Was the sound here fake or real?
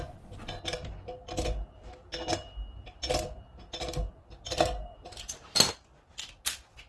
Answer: real